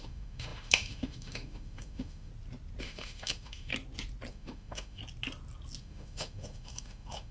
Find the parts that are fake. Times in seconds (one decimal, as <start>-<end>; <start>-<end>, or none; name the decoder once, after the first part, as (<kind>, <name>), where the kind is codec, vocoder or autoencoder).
0.0-2.3 (autoencoder, DAC-VAE); 2.8-3.7; 4.3-5.0; 5.8-7.3